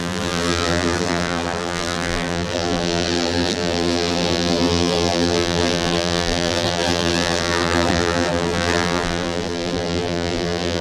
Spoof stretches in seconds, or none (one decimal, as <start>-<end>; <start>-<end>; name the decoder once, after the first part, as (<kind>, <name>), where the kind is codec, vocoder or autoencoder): 0.0-10.8 (vocoder, BigVGAN v2)